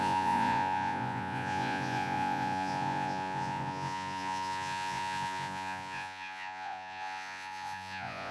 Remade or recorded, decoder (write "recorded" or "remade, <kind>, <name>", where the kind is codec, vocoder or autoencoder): remade, vocoder, Vocos